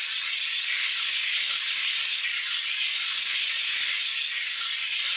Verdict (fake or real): real